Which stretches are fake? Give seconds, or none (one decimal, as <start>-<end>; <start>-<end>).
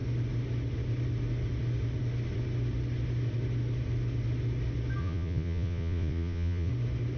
5.0-6.7